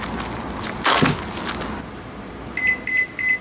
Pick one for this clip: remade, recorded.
recorded